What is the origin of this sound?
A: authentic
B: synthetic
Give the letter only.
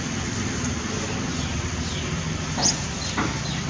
A